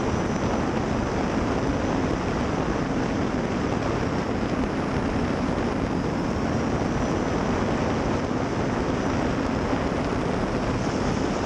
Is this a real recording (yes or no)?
yes